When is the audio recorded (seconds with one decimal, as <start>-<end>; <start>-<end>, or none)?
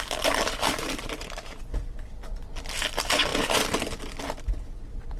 0.0-0.7; 1.6-5.2